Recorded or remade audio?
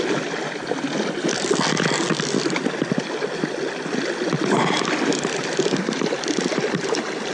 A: recorded